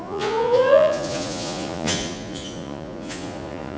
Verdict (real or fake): fake